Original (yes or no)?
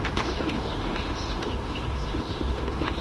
no